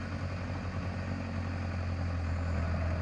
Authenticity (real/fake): real